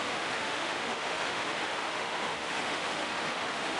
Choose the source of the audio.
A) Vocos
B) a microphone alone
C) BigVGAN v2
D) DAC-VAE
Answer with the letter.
D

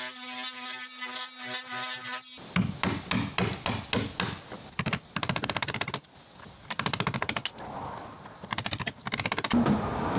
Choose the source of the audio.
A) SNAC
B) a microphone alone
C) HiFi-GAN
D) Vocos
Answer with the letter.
B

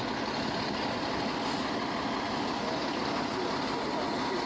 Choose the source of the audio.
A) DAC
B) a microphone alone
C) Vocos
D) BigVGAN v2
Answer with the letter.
B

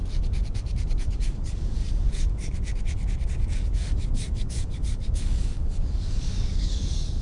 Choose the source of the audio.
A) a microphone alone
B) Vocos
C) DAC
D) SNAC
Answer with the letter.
C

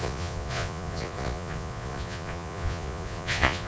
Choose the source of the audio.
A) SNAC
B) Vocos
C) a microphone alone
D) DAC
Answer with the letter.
B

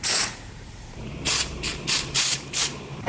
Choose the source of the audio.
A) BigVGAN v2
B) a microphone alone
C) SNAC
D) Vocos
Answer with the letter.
A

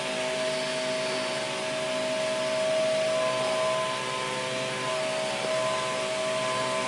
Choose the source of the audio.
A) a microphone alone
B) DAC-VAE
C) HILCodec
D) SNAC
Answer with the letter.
A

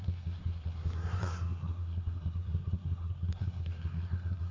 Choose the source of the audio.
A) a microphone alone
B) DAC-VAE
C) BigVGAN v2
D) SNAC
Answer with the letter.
D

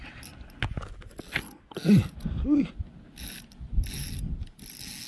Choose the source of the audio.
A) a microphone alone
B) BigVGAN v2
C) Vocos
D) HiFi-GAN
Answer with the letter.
A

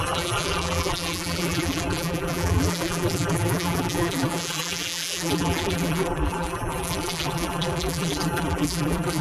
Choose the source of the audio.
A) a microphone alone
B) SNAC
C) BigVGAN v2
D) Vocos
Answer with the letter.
C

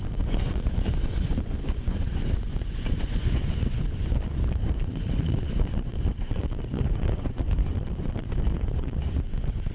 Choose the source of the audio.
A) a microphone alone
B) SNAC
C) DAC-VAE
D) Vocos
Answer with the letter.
D